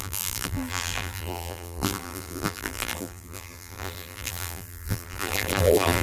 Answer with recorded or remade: remade